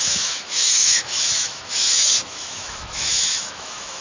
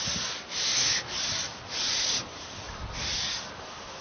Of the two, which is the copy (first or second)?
first